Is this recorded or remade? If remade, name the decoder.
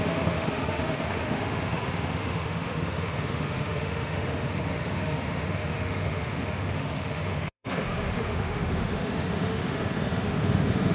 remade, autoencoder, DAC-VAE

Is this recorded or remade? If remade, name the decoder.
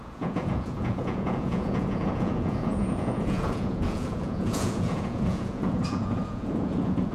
remade, vocoder, Vocos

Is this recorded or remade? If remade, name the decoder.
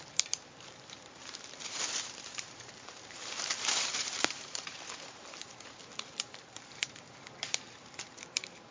remade, vocoder, BigVGAN v2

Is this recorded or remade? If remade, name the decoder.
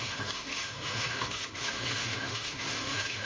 remade, autoencoder, DAC-VAE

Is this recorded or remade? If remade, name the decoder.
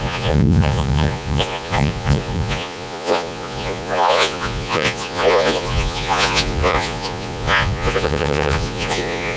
remade, vocoder, Vocos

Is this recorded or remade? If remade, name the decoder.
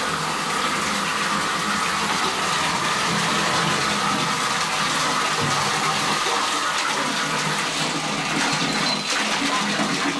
recorded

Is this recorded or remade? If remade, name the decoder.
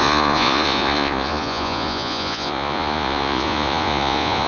remade, vocoder, Vocos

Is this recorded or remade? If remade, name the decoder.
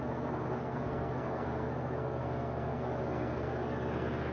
remade, codec, SNAC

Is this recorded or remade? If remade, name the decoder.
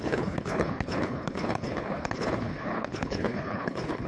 remade, codec, HILCodec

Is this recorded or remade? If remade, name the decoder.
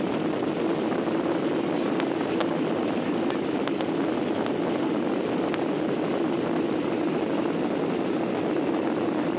recorded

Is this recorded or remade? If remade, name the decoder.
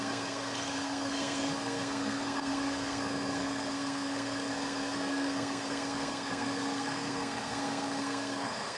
remade, codec, SNAC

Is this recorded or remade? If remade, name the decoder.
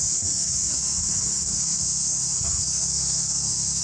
remade, codec, SNAC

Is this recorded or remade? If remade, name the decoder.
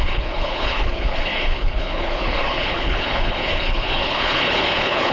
remade, codec, HILCodec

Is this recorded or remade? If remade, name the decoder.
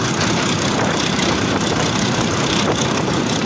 remade, vocoder, BigVGAN v2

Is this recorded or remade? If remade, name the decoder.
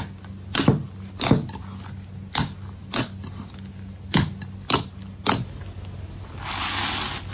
recorded